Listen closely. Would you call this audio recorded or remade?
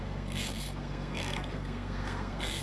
remade